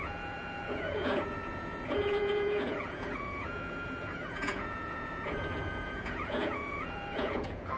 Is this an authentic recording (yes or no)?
no